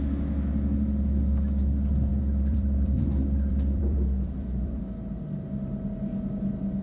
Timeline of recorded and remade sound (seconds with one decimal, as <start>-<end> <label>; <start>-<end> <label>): 0.0-2.1 recorded; 2.1-4.8 remade; 4.8-6.8 recorded